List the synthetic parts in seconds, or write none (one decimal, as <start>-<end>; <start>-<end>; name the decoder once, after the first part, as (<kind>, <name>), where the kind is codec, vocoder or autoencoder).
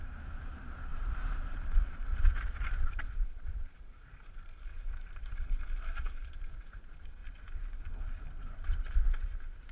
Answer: 0.0-7.2 (vocoder, BigVGAN v2); 8.4-9.7